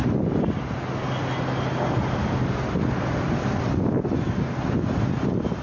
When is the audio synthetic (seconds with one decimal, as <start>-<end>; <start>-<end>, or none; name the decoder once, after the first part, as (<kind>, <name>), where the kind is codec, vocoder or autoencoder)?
none